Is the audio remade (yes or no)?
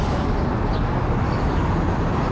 no